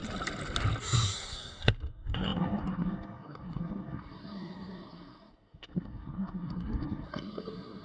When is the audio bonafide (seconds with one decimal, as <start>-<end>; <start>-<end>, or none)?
0.0-0.8